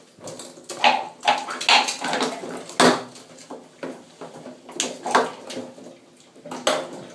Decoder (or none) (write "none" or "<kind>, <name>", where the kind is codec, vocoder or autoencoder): none